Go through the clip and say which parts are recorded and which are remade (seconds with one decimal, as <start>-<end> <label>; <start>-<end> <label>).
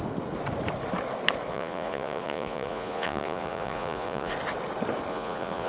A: 0.0-1.5 recorded; 1.5-4.3 remade; 4.3-5.1 recorded; 5.1-5.7 remade